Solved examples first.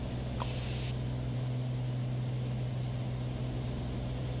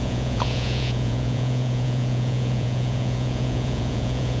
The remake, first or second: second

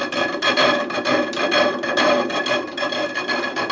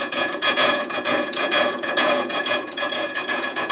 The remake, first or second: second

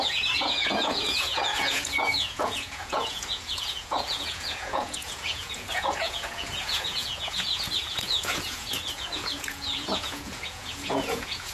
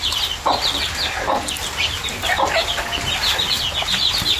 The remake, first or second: first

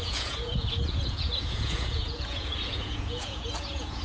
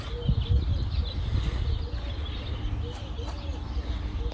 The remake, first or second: first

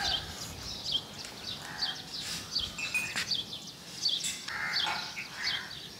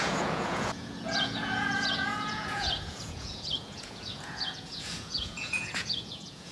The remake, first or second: second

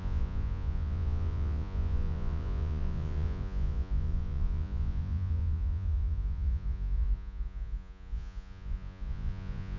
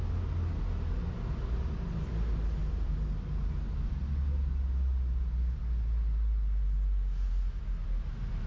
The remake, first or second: first